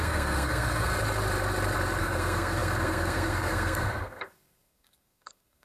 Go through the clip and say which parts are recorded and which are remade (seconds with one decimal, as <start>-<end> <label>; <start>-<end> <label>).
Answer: 0.0-0.9 remade; 0.9-2.0 recorded; 2.0-5.6 remade